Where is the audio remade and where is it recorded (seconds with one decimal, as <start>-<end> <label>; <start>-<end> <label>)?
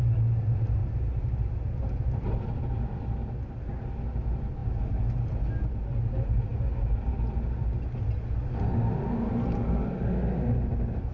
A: 0.0-0.8 recorded; 0.8-2.7 remade; 2.7-3.2 recorded; 3.2-3.8 remade; 3.8-11.1 recorded